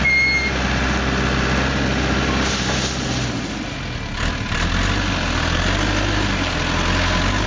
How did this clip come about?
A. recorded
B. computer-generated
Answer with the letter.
A